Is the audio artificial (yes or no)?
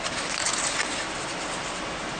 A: no